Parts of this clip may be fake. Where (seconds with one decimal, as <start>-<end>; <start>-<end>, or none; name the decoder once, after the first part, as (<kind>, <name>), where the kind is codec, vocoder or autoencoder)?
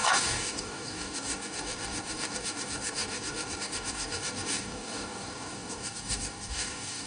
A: 0.0-7.1 (codec, DAC)